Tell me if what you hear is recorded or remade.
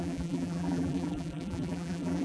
remade